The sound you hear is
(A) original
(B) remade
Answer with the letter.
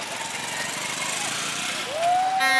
A